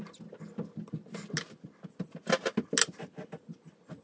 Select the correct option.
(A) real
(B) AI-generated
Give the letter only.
A